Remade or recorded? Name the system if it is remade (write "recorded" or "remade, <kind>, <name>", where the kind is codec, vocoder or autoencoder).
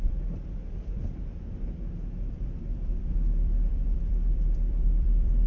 remade, vocoder, BigVGAN v2